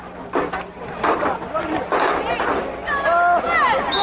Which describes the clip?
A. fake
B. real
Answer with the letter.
B